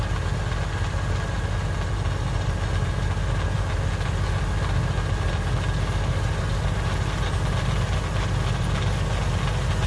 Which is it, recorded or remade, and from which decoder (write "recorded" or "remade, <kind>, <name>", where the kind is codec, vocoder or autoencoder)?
recorded